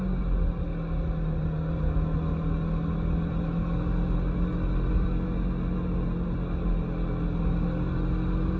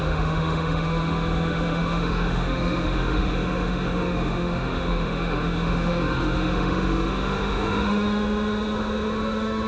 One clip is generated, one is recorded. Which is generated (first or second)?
second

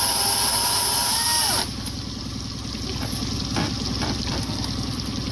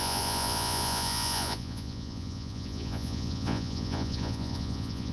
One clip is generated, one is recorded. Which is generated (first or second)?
second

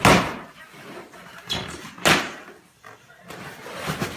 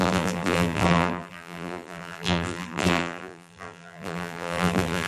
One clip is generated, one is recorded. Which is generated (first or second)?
second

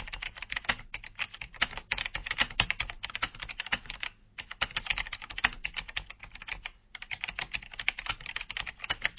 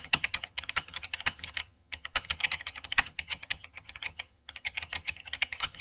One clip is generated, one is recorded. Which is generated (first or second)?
second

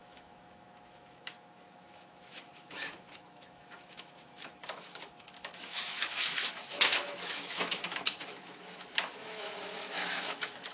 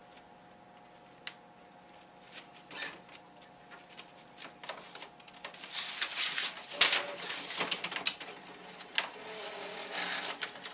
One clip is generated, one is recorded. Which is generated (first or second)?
first